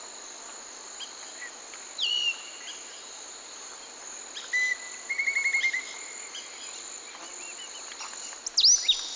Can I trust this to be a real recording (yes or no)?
yes